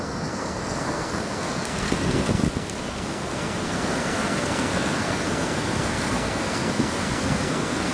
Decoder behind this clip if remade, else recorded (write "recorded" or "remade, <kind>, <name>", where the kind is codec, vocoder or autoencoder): remade, codec, SNAC